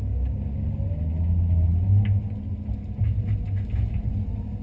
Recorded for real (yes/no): yes